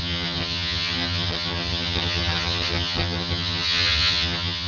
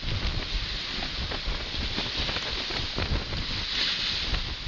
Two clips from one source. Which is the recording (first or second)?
second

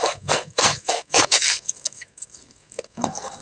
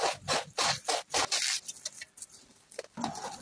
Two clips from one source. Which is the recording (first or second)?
second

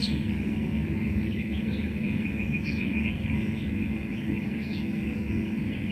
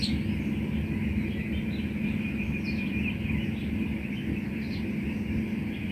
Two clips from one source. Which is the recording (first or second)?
second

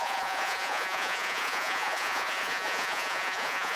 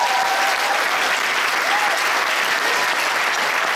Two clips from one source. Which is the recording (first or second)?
second